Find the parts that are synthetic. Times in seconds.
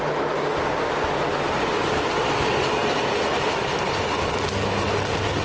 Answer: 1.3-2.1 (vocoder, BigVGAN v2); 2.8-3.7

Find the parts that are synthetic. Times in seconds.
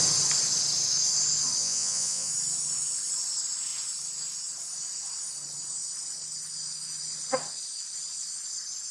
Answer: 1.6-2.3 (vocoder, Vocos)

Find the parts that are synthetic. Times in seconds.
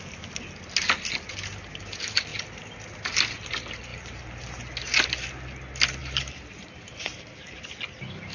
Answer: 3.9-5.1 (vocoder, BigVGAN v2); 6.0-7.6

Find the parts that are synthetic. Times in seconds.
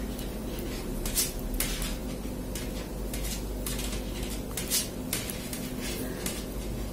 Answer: none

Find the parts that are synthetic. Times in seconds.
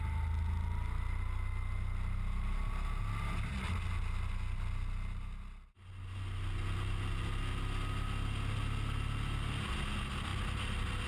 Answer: none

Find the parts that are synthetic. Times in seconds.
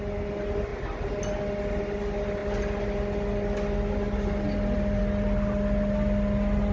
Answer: none